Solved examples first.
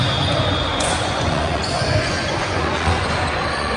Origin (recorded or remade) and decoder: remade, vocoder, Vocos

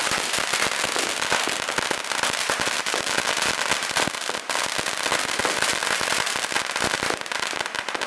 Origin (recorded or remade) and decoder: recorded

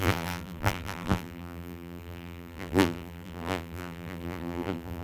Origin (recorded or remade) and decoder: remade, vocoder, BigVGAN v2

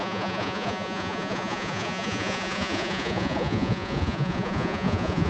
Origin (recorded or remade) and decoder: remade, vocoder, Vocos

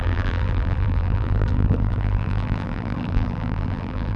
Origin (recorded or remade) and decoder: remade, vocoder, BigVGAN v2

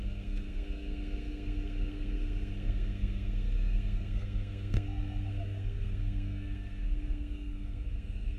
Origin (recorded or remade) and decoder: remade, codec, SNAC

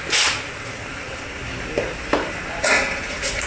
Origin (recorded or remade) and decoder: remade, vocoder, BigVGAN v2